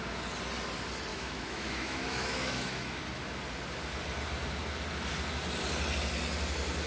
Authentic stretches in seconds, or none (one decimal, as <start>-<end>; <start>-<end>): 0.0-1.1; 3.0-6.9